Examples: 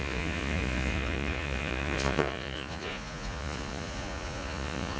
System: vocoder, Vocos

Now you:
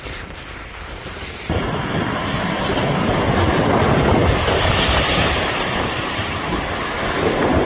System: vocoder, BigVGAN v2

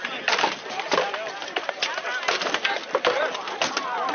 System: none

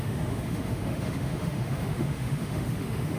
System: autoencoder, DAC-VAE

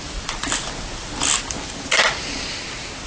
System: none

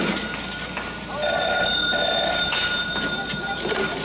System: none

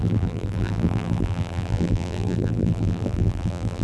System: vocoder, BigVGAN v2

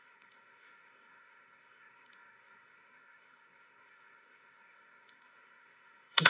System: codec, SNAC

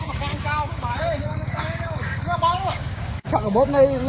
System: codec, DAC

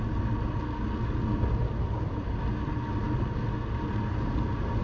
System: none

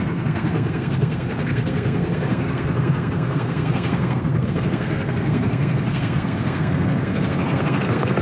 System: codec, SNAC